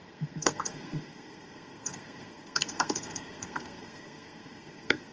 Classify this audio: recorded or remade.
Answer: remade